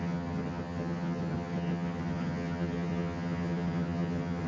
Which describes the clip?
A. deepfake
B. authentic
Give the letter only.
A